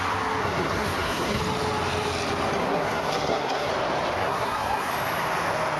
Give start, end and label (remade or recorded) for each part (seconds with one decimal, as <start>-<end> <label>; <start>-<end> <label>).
0.0-0.4 recorded; 0.4-1.4 remade; 1.4-2.6 recorded; 2.6-3.7 remade; 3.7-4.2 recorded; 4.2-4.9 remade; 4.9-5.8 recorded

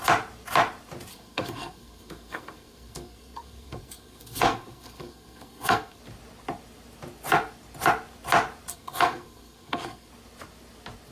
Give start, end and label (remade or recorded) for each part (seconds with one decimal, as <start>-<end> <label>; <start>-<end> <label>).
0.0-1.1 recorded; 1.1-6.0 remade; 6.0-8.7 recorded; 8.7-10.1 remade; 10.1-11.1 recorded